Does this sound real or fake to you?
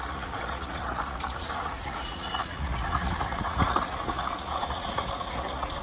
fake